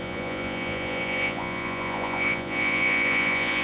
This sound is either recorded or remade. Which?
remade